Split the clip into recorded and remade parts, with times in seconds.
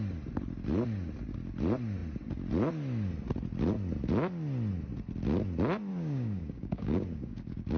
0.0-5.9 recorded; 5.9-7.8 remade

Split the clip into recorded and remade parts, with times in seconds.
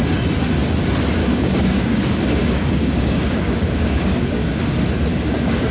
0.0-1.2 recorded; 1.2-4.6 remade; 4.6-5.1 recorded; 5.1-5.7 remade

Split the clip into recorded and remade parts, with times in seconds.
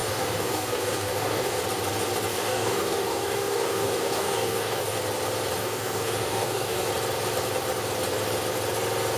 0.0-1.6 remade; 1.6-2.3 recorded; 2.3-5.0 remade; 5.0-5.6 recorded; 5.6-6.9 remade; 6.9-9.2 recorded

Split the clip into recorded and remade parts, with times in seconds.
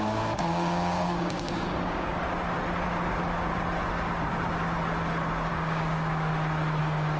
0.0-2.2 remade; 2.2-5.5 recorded; 5.5-6.3 remade; 6.3-6.8 recorded; 6.8-7.2 remade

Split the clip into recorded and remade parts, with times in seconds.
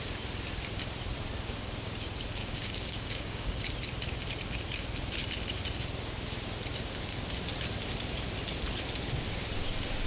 0.0-2.4 recorded; 2.4-3.6 remade; 3.6-10.1 recorded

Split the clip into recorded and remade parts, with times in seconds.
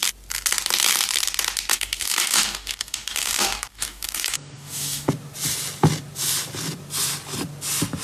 0.0-1.7 recorded; 1.7-5.1 remade; 5.1-8.0 recorded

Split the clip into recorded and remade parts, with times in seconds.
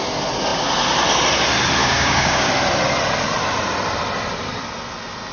0.0-1.8 recorded; 1.8-2.5 remade; 2.5-5.3 recorded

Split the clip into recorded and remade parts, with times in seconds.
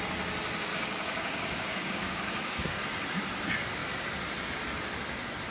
0.0-0.7 recorded; 0.7-2.8 remade; 2.8-5.5 recorded